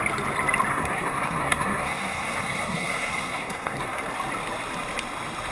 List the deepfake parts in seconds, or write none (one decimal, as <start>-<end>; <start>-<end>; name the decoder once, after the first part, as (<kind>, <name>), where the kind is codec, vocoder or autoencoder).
0.7-4.0 (codec, SNAC)